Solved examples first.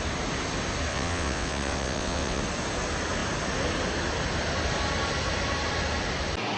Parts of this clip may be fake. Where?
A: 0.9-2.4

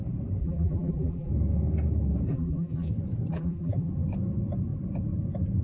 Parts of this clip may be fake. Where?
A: 0.4-1.3; 2.3-2.9; 3.3-3.9